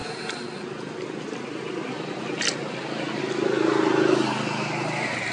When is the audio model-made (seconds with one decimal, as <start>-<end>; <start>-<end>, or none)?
none